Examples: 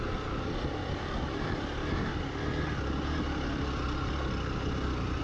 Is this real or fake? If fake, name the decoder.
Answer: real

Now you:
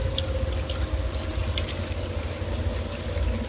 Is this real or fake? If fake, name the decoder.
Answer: real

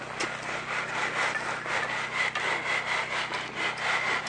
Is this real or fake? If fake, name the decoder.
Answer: real